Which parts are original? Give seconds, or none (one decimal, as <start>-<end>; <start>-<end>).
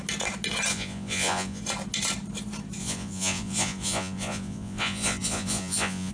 0.0-0.7; 1.6-2.8